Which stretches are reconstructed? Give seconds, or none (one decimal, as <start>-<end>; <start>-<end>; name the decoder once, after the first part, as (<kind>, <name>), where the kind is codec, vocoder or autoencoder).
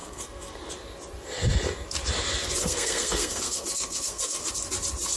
0.0-0.7 (codec, SNAC); 2.6-4.5